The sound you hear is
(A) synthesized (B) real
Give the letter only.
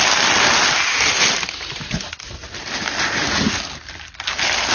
B